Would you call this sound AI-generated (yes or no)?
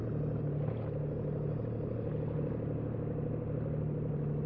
no